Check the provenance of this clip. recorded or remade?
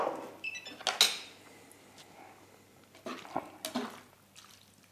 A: recorded